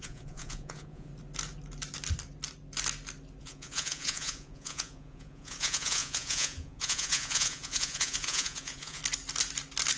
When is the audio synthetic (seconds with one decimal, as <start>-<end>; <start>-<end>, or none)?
0.0-1.1; 3.4-9.0